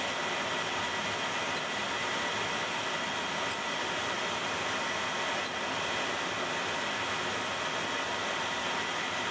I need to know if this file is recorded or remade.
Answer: recorded